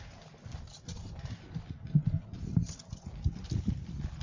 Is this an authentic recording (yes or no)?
yes